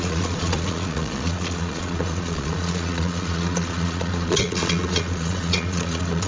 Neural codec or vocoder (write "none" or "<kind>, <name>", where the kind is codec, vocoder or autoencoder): vocoder, Vocos